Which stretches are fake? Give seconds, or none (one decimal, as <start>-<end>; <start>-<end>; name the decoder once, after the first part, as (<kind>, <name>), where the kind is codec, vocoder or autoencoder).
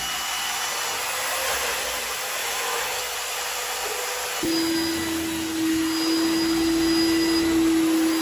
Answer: 2.4-3.0 (autoencoder, DAC-VAE)